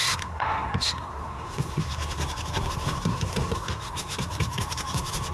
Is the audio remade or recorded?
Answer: remade